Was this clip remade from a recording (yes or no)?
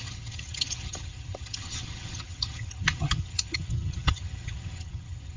yes